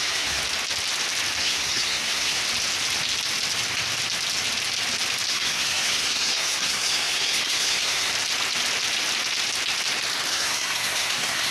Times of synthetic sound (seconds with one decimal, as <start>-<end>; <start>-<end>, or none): 0.0-0.4; 1.4-2.4; 5.3-8.1; 10.3-11.5